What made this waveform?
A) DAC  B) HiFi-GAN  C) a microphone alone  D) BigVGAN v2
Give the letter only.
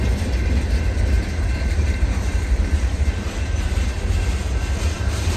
D